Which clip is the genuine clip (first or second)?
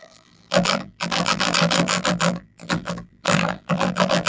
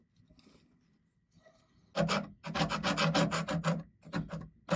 second